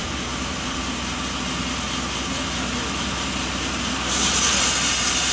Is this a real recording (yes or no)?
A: yes